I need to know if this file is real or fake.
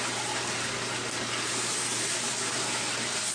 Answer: real